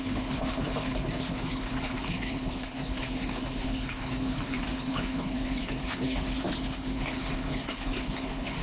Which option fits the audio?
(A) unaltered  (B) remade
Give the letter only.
B